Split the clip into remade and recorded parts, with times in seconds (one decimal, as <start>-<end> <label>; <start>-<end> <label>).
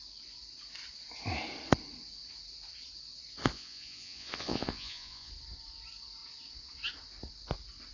0.0-3.4 recorded; 3.4-5.3 remade; 5.3-7.9 recorded